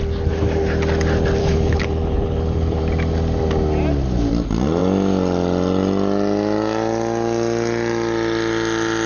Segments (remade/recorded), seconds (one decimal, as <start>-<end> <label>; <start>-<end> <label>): 0.0-1.4 recorded; 1.4-2.8 remade; 2.8-9.1 recorded